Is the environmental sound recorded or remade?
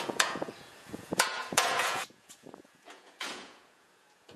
remade